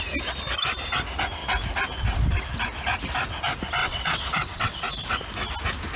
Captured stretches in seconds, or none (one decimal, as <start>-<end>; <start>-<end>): 0.0-3.8; 4.8-6.0